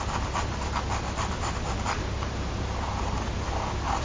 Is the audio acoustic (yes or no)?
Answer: yes